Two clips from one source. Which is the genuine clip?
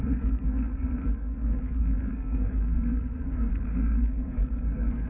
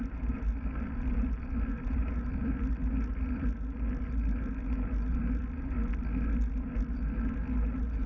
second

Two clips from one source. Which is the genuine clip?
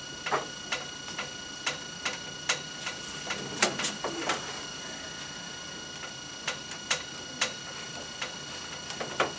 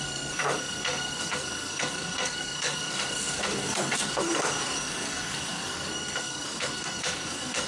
first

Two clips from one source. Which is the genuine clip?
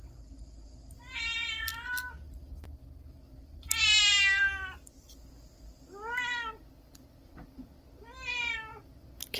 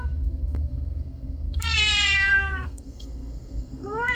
first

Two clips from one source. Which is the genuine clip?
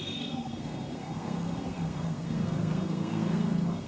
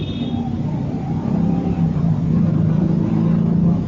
second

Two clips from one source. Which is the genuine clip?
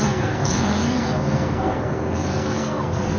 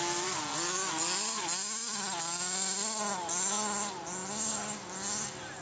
second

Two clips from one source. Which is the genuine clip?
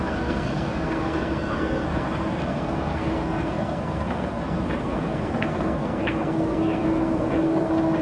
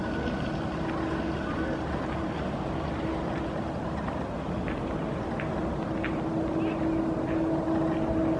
second